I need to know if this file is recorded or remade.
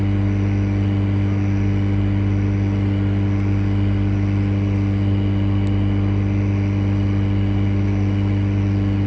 recorded